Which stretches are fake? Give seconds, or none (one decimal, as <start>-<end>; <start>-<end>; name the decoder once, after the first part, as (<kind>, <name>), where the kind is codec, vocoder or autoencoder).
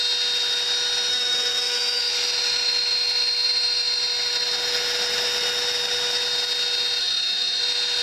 1.1-2.0 (autoencoder, DAC-VAE); 7.0-7.6